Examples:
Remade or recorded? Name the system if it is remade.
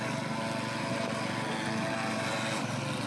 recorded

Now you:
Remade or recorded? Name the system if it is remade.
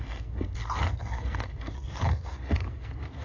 remade, codec, SNAC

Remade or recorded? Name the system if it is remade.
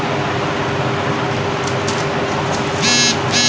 recorded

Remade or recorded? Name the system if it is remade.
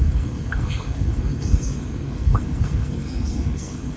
remade, codec, SNAC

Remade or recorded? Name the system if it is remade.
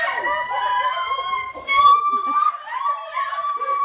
remade, vocoder, BigVGAN v2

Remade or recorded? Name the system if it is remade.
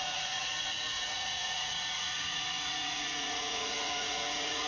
remade, vocoder, Vocos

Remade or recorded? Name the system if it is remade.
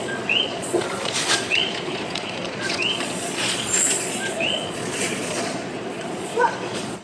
remade, vocoder, Vocos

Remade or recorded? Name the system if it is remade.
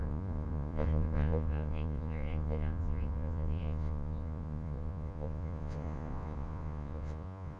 remade, vocoder, Vocos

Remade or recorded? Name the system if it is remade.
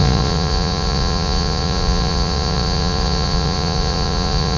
remade, vocoder, Vocos